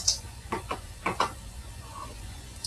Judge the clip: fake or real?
fake